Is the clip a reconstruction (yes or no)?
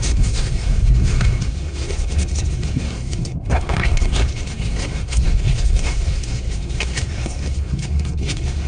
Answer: yes